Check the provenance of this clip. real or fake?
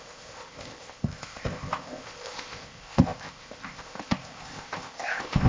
fake